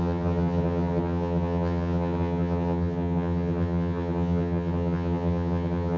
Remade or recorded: remade